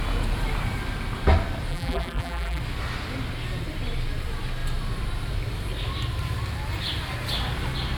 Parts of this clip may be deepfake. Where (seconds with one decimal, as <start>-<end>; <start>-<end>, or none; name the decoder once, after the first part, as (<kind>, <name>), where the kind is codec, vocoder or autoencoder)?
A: 1.7-2.6 (vocoder, BigVGAN v2)